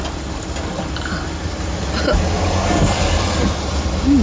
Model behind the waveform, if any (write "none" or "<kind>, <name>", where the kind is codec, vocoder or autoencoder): none